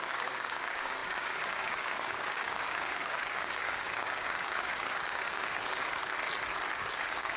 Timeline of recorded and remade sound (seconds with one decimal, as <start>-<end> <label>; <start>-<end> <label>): 0.0-6.0 remade; 6.0-6.8 recorded; 6.8-7.4 remade